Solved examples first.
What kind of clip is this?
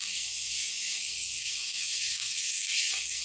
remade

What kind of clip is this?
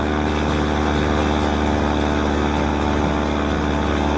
recorded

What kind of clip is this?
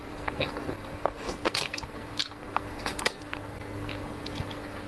remade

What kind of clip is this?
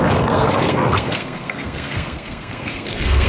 remade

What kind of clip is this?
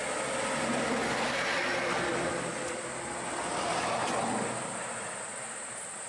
recorded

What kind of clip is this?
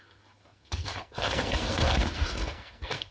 remade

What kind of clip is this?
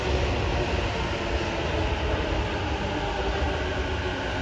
recorded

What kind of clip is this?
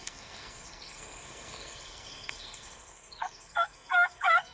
remade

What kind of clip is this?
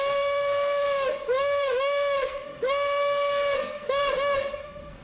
remade